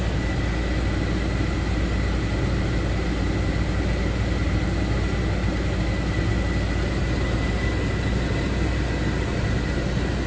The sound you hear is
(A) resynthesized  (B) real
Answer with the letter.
B